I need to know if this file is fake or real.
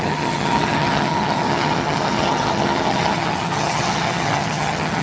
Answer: fake